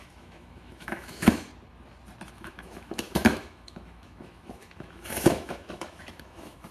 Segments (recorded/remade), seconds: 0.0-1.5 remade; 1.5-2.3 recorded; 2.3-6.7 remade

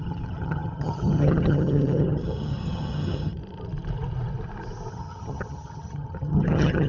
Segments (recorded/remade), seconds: 0.0-3.4 remade; 3.4-4.9 recorded; 4.9-6.9 remade

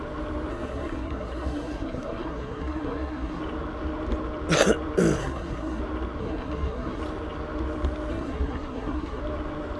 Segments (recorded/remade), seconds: 0.0-0.5 recorded; 0.5-3.4 remade; 3.4-5.2 recorded; 5.2-5.8 remade; 5.8-6.2 recorded; 6.2-7.0 remade; 7.0-8.1 recorded; 8.1-9.2 remade; 9.2-9.8 recorded

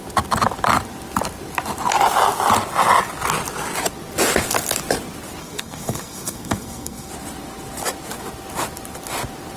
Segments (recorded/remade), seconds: 0.0-5.4 recorded; 5.4-7.1 remade; 7.1-9.6 recorded

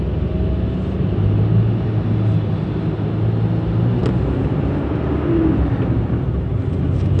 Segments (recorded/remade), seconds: 0.0-7.2 recorded

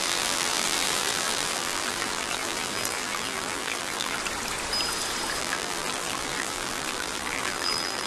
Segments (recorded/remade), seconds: 0.0-4.2 remade; 4.2-5.4 recorded; 5.4-8.1 remade

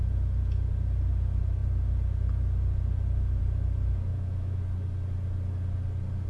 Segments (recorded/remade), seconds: 0.0-4.1 recorded; 4.1-4.6 remade; 4.6-6.3 recorded

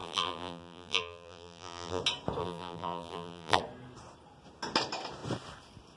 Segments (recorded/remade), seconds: 0.0-2.0 remade; 2.0-2.4 recorded; 2.4-3.6 remade; 3.6-6.0 recorded